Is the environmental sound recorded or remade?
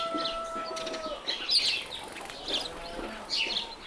recorded